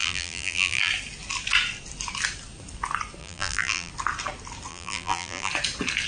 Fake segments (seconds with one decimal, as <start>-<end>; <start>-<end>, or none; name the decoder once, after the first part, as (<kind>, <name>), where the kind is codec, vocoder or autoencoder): 0.0-0.9 (vocoder, BigVGAN v2); 3.2-3.9; 4.7-5.5